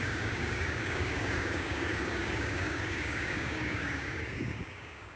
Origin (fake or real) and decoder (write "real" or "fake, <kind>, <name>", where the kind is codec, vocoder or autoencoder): fake, codec, DAC